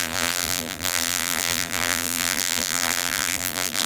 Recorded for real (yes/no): no